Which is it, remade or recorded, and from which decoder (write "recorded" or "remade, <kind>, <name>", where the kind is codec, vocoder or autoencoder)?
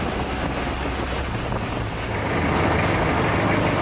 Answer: recorded